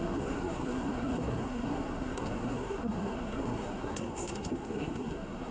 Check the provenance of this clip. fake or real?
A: fake